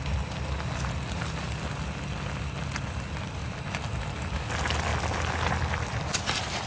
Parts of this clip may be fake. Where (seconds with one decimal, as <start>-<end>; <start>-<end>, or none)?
none